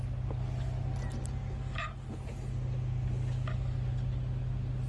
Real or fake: real